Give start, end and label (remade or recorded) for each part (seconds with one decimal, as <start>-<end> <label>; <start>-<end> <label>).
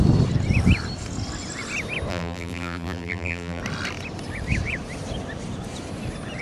0.0-2.1 recorded; 2.1-3.6 remade; 3.6-6.4 recorded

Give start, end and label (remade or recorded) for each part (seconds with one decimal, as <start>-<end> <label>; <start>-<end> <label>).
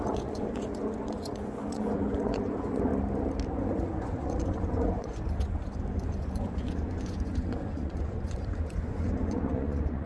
0.0-2.9 remade; 2.9-3.5 recorded; 3.5-10.1 remade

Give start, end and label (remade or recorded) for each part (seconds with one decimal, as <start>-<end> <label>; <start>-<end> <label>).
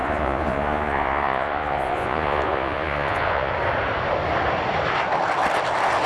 0.0-3.5 remade; 3.5-6.1 recorded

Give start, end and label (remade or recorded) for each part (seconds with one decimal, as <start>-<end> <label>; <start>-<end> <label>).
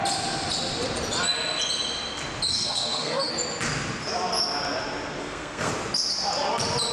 0.0-2.5 recorded; 2.5-3.3 remade; 3.3-5.2 recorded; 5.2-5.7 remade; 5.7-6.9 recorded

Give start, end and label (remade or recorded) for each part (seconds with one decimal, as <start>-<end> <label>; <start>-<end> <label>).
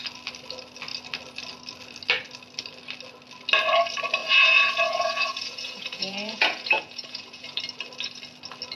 0.0-4.2 recorded; 4.2-7.6 remade; 7.6-8.7 recorded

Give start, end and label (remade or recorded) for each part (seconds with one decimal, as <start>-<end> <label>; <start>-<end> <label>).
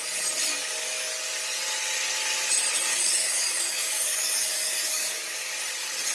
0.0-0.5 recorded; 0.5-1.1 remade; 1.1-2.9 recorded; 2.9-5.5 remade; 5.5-6.1 recorded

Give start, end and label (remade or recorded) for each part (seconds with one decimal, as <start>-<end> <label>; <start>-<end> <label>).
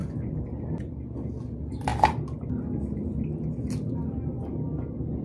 0.0-5.2 recorded